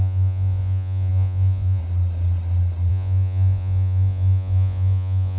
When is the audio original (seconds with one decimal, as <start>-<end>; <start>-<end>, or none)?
1.8-2.9